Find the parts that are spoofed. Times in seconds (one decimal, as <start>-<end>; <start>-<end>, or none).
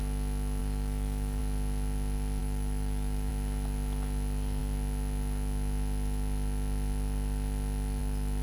0.6-1.4; 2.4-3.3